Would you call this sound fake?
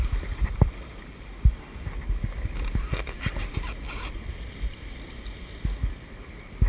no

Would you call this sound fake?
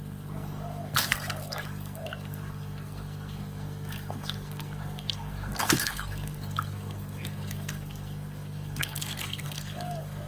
yes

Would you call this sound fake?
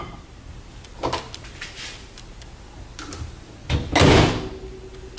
no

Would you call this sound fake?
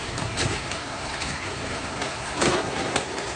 yes